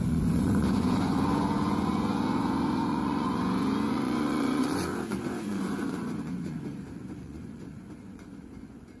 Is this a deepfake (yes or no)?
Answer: yes